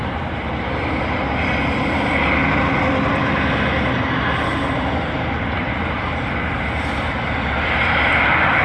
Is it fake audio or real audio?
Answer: real